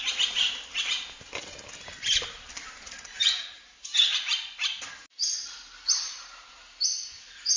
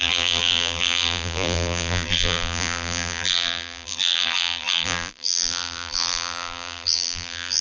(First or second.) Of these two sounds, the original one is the first